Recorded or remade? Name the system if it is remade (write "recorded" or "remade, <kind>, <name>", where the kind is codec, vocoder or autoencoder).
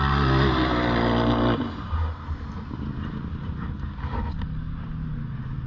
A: recorded